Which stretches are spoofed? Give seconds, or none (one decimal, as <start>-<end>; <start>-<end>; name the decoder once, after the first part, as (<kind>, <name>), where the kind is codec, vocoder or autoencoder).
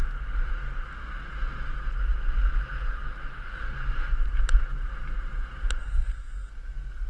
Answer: 5.8-6.5 (codec, SNAC)